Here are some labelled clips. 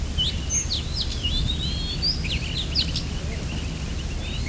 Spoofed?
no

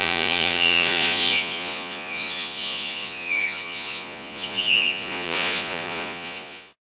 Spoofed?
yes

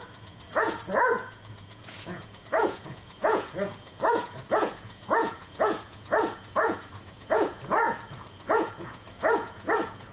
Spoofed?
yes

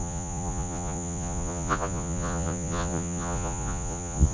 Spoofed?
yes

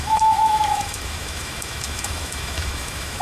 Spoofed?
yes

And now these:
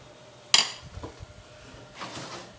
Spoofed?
no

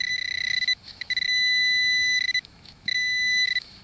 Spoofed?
yes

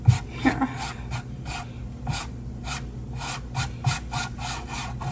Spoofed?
no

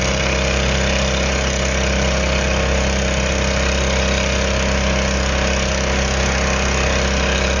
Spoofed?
no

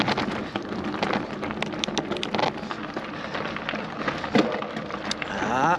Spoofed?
no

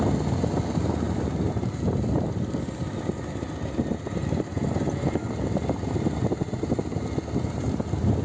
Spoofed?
no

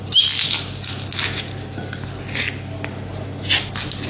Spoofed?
no